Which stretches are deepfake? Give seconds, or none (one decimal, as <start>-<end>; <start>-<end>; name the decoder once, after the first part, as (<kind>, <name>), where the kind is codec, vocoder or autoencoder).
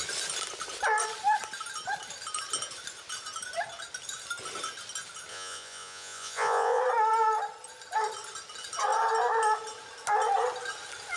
5.3-6.8 (vocoder, Vocos)